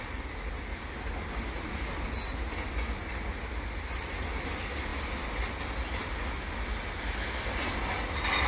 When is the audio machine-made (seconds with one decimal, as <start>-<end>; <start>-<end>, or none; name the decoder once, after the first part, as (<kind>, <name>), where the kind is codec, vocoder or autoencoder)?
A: none